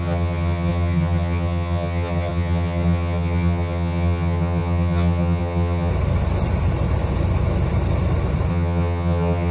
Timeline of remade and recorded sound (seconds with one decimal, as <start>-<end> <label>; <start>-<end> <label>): 0.0-5.9 remade; 5.9-8.5 recorded; 8.5-9.5 remade